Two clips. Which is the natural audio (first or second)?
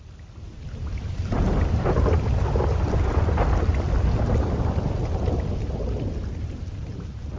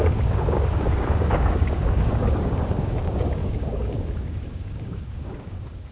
first